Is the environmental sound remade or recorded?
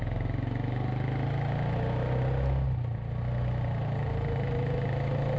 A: recorded